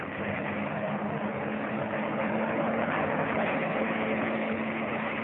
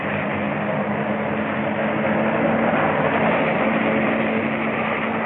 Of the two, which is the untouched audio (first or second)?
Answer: second